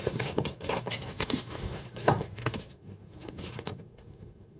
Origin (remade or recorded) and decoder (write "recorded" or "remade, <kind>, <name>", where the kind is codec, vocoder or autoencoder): remade, codec, SNAC